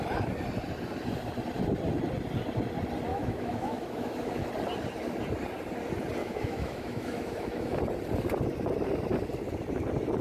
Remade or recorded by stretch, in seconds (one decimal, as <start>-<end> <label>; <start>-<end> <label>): 0.0-3.1 recorded; 3.1-4.5 remade; 4.5-6.2 recorded; 6.2-7.8 remade; 7.8-10.2 recorded